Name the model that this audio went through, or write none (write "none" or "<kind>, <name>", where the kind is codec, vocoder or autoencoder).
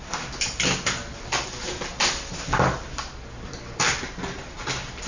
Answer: none